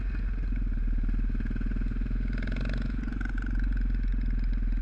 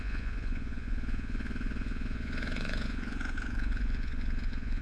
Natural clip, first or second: first